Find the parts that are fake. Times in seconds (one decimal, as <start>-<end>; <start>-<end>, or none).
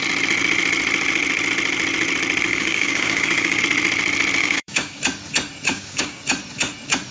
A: 2.5-3.6; 4.4-5.0; 5.7-6.2